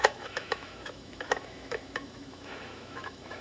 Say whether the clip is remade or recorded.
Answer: remade